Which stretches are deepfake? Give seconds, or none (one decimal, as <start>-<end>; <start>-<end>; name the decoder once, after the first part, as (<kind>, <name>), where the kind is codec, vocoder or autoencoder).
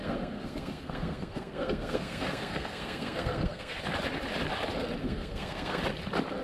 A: 0.0-3.8 (codec, SNAC); 5.0-5.8